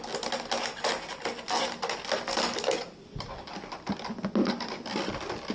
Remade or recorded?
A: recorded